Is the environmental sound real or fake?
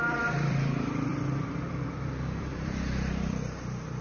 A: fake